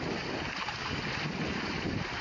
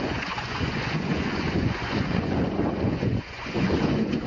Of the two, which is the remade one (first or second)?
second